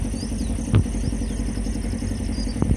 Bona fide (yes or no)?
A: yes